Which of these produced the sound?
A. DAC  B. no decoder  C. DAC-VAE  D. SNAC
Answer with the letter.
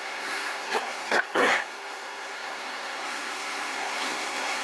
D